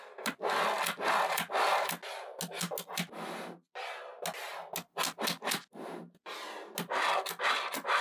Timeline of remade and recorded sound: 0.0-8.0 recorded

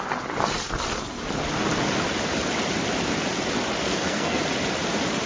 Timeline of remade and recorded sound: 0.0-3.8 recorded; 3.8-4.4 remade; 4.4-5.3 recorded

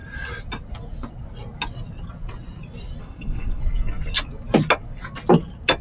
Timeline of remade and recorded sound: 0.0-3.0 recorded; 3.0-3.6 remade; 3.6-5.8 recorded

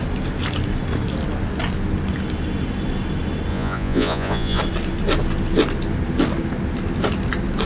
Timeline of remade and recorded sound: 0.0-3.5 recorded; 3.5-4.6 remade; 4.6-7.7 recorded

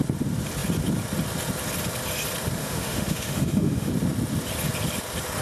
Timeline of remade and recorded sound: 0.0-2.6 recorded; 2.6-3.9 remade; 3.9-5.4 recorded

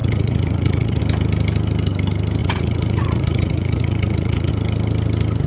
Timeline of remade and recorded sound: 0.0-1.0 remade; 1.0-2.4 recorded; 2.4-4.5 remade; 4.5-5.5 recorded

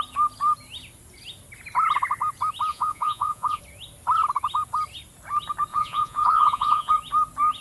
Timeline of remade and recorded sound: 0.0-2.7 recorded; 2.7-3.6 remade; 3.6-5.7 recorded; 5.7-6.9 remade; 6.9-7.6 recorded